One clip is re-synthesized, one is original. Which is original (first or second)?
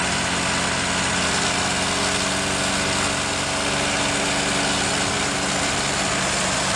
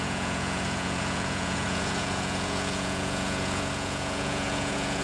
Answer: first